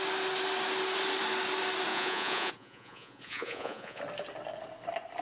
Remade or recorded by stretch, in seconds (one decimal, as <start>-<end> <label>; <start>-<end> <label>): 0.0-1.9 recorded; 1.9-4.0 remade; 4.0-5.2 recorded